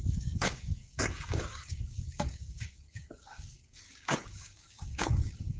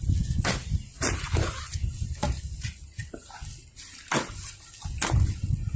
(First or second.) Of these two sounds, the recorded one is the second